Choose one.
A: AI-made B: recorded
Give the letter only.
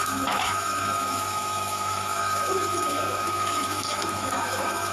A